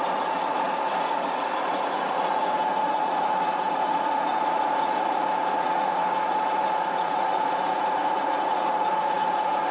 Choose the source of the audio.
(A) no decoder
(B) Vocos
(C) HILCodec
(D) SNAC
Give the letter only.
B